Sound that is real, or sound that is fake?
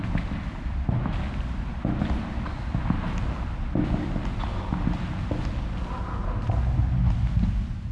real